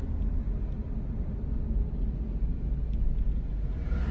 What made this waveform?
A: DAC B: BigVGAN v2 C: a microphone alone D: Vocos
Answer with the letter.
C